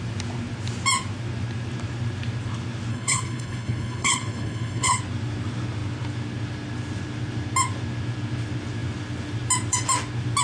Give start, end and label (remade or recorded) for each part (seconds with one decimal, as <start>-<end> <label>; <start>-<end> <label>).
0.0-2.9 recorded; 2.9-5.0 remade; 5.0-10.4 recorded